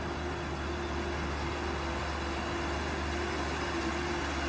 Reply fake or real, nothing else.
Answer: real